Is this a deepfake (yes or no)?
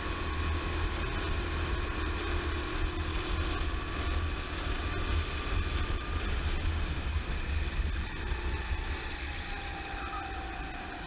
no